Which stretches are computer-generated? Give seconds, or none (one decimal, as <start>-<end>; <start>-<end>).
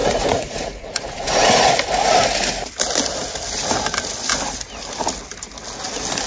0.0-1.7